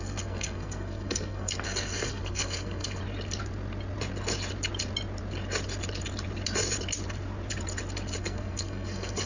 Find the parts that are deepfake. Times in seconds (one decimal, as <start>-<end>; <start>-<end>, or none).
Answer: 0.0-3.0; 8.2-9.3